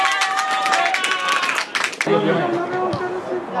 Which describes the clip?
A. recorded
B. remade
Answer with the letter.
A